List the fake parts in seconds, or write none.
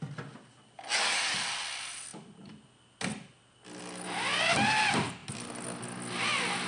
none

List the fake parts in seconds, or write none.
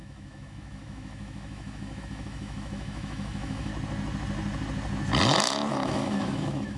0.0-3.7 (autoencoder, DAC-VAE); 5.7-6.8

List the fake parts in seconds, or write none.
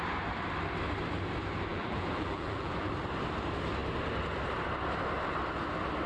1.7-2.9 (vocoder, BigVGAN v2)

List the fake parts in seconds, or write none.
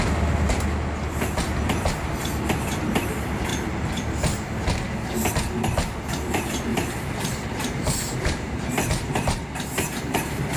6.7-10.6 (vocoder, BigVGAN v2)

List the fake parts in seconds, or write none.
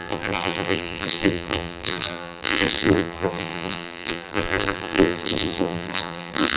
0.0-6.6 (vocoder, BigVGAN v2)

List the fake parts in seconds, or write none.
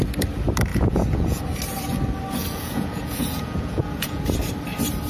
0.7-1.4 (vocoder, Vocos); 2.4-4.2